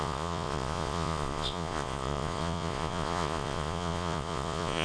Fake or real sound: fake